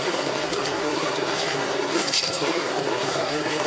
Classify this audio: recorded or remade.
remade